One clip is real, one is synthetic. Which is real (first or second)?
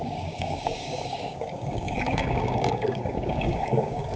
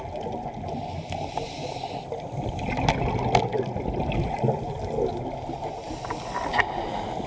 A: second